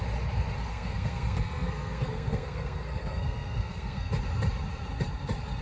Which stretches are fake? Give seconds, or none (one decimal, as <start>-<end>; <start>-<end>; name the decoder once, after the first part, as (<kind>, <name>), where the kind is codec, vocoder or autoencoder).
0.7-4.1 (codec, SNAC)